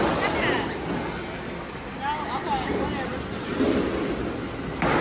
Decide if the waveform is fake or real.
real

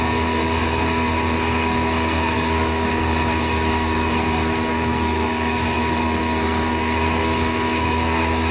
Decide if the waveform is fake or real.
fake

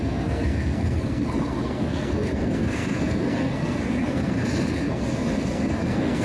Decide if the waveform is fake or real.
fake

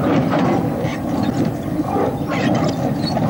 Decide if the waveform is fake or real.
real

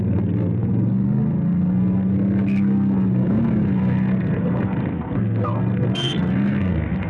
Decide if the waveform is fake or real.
fake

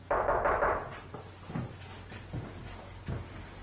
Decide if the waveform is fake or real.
real